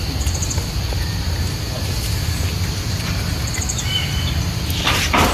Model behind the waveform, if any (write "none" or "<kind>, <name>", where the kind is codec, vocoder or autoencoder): none